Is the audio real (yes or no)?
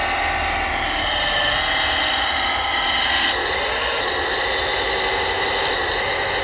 yes